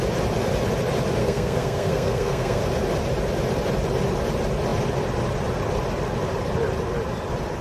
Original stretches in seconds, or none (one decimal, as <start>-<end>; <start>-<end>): 0.0-1.2; 2.6-7.6